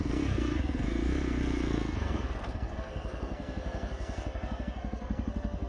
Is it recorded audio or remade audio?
remade